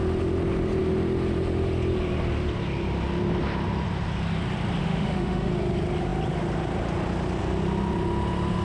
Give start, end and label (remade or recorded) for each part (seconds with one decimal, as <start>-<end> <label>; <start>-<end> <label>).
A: 0.0-4.8 recorded; 4.8-5.5 remade; 5.5-8.6 recorded